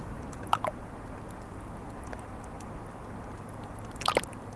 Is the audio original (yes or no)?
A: yes